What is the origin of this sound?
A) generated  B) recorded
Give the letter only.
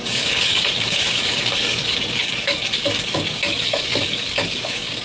A